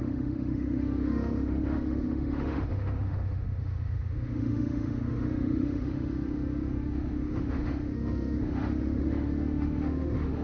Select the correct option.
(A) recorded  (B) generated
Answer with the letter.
B